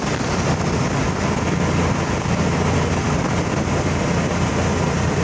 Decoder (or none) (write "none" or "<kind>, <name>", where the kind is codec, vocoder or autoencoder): none